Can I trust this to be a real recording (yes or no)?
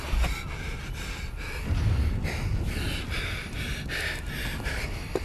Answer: yes